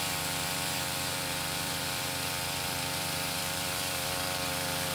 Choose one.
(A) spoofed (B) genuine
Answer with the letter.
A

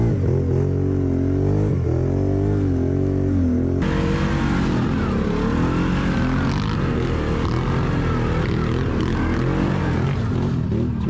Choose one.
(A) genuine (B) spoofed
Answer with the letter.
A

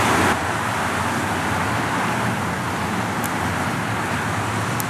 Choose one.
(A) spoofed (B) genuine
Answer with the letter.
B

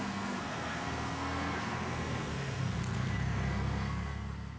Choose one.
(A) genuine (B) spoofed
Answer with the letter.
B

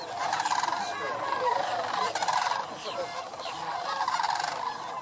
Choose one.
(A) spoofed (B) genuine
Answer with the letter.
B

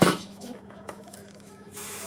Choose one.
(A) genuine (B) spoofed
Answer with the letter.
B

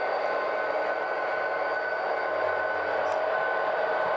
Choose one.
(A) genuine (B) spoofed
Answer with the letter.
A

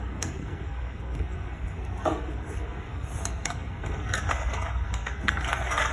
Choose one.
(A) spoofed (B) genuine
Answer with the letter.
A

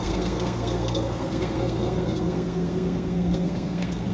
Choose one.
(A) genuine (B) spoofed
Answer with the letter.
B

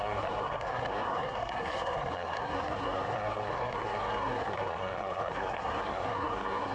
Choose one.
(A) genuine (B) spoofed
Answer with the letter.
B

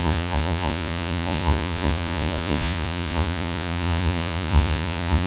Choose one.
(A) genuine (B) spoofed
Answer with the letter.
B